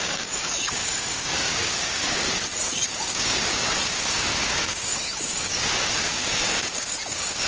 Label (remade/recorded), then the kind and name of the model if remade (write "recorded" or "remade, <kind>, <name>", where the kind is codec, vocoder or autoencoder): remade, codec, DAC